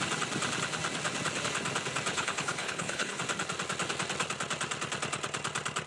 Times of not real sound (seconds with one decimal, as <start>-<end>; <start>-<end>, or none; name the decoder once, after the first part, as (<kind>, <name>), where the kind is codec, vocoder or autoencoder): 2.1-3.2 (codec, HILCodec)